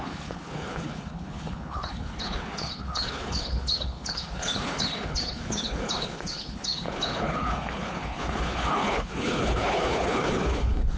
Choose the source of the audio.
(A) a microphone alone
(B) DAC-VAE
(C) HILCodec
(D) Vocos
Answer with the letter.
C